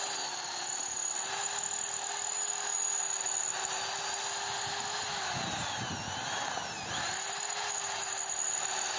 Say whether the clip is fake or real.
real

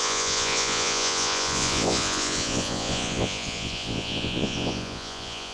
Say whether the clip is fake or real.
fake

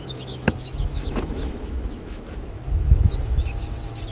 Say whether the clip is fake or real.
fake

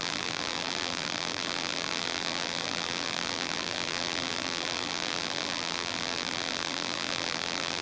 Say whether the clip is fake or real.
fake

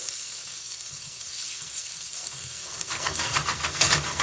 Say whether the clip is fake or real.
fake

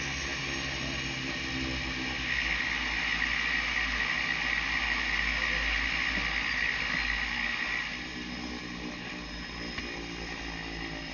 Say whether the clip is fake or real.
real